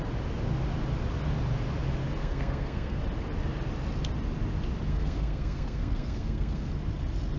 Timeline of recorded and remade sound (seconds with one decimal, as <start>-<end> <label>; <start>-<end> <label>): 0.0-2.2 recorded; 2.2-3.0 remade; 3.0-4.9 recorded; 4.9-6.7 remade; 6.7-7.4 recorded